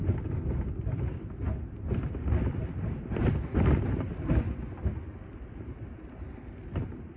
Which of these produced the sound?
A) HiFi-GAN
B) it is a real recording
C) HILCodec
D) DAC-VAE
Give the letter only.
B